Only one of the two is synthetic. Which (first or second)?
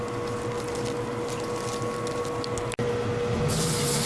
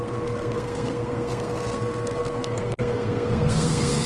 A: second